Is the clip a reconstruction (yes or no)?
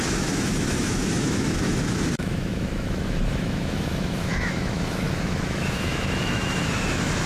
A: yes